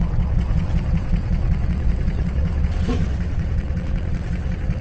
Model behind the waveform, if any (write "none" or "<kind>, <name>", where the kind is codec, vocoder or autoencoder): vocoder, WaveNeXt